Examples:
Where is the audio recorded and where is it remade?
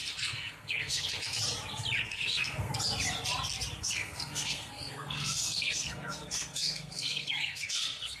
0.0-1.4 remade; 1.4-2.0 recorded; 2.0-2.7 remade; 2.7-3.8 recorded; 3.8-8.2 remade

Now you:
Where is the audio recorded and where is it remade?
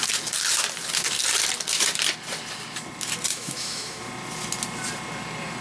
0.0-3.3 recorded; 3.3-4.0 remade; 4.0-5.6 recorded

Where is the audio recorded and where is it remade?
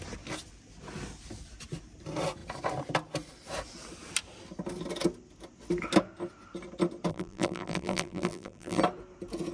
0.0-7.1 recorded; 7.1-8.8 remade; 8.8-9.5 recorded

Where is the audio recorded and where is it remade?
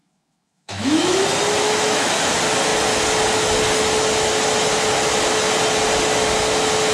0.0-1.2 remade; 1.2-1.6 recorded; 1.6-2.1 remade; 2.1-6.9 recorded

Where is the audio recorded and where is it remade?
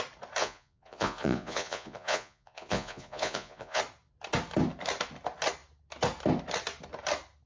0.0-0.4 recorded; 0.4-3.8 remade; 3.8-7.5 recorded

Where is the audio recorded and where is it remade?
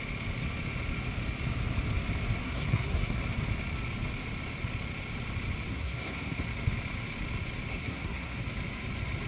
0.0-2.4 recorded; 2.4-3.2 remade; 3.2-5.7 recorded; 5.7-6.4 remade; 6.4-7.7 recorded; 7.7-8.4 remade; 8.4-9.3 recorded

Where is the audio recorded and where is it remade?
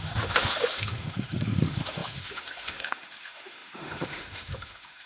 0.0-5.1 remade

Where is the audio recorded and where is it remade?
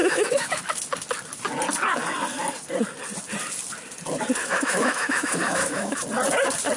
0.0-0.6 remade; 0.6-4.4 recorded; 4.4-6.0 remade; 6.0-6.8 recorded